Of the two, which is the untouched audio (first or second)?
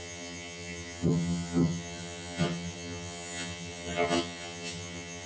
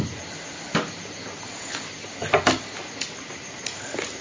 second